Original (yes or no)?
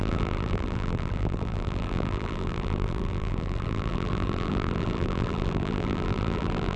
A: no